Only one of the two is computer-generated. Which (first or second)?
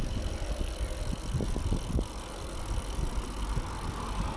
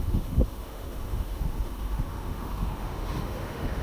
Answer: second